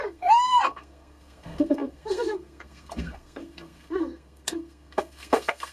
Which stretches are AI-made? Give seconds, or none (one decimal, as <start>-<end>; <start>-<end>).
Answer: 0.0-5.7